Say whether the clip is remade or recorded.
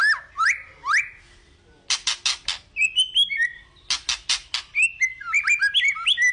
recorded